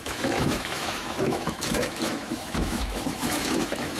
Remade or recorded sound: remade